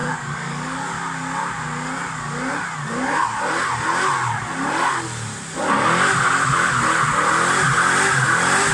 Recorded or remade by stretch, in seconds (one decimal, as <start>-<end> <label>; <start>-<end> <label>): 0.0-0.9 remade; 0.9-8.7 recorded